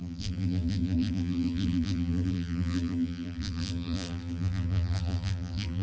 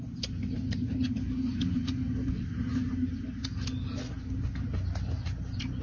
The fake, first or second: first